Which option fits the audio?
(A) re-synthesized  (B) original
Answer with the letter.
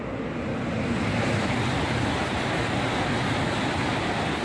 B